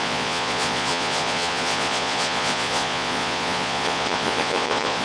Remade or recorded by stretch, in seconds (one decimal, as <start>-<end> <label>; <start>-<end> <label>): 0.0-5.0 remade